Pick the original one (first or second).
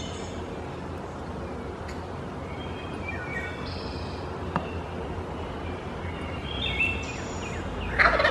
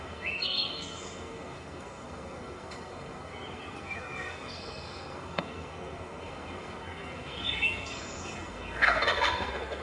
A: first